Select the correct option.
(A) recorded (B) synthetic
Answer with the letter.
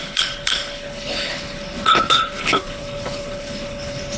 B